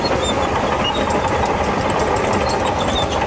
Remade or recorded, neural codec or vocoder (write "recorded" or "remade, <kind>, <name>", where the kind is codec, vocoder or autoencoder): recorded